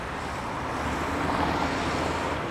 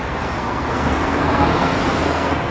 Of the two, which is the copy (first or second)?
second